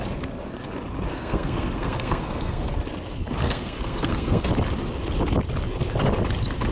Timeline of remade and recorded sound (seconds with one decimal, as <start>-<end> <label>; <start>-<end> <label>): 0.0-1.1 recorded; 1.1-2.7 remade; 2.7-3.4 recorded; 3.4-4.5 remade; 4.5-6.7 recorded